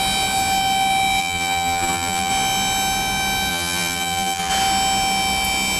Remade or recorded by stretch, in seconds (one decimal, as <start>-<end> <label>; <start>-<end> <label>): 0.0-1.2 recorded; 1.2-2.3 remade; 2.3-3.5 recorded; 3.5-4.5 remade; 4.5-5.8 recorded